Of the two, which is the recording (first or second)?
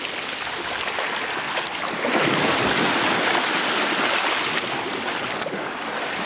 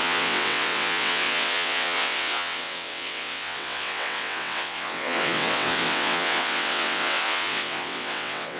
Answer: first